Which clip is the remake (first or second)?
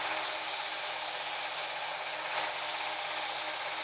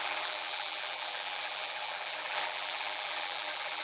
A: second